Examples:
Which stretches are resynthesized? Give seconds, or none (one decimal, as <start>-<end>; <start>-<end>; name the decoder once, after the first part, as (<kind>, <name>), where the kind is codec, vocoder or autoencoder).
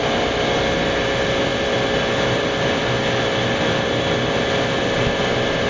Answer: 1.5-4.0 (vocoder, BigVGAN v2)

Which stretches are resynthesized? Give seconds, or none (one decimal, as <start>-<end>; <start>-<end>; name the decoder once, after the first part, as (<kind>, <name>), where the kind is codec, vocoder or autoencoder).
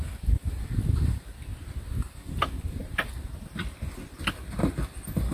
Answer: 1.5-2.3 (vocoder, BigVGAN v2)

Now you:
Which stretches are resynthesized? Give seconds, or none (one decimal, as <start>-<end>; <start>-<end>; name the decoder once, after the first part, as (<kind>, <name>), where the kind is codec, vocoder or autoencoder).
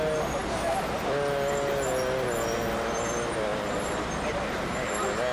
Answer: 3.5-4.0 (vocoder, BigVGAN v2)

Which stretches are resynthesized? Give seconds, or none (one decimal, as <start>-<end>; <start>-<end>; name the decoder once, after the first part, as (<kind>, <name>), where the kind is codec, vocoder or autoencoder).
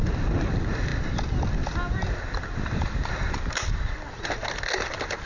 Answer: none